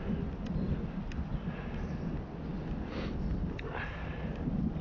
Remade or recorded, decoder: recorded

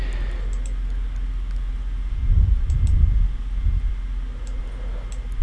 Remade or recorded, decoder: recorded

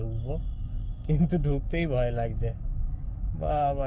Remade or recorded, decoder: remade, codec, DAC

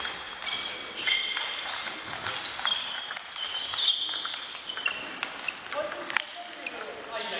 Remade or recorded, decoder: recorded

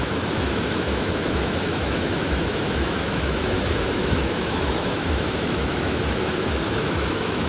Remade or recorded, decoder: remade, autoencoder, DAC-VAE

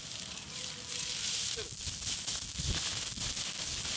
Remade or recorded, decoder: recorded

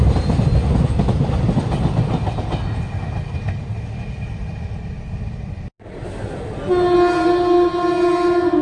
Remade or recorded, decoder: recorded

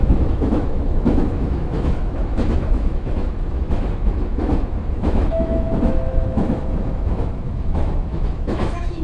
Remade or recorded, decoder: remade, autoencoder, DAC-VAE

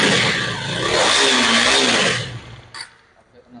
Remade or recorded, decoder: recorded